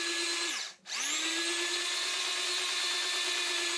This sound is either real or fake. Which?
real